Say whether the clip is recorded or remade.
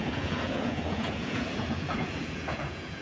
remade